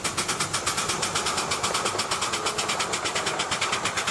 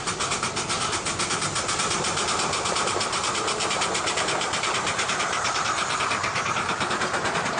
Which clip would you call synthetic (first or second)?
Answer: second